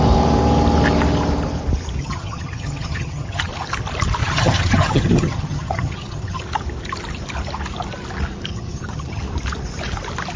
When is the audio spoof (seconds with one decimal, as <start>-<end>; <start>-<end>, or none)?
2.0-3.5; 4.2-6.4; 8.5-9.2